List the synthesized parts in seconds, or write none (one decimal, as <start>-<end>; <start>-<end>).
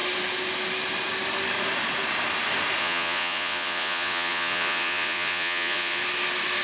2.8-6.0